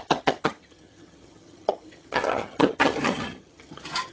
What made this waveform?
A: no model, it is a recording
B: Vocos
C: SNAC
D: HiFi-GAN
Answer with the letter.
D